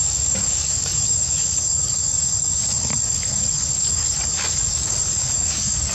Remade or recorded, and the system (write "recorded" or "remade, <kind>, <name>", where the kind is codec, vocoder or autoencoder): remade, codec, DAC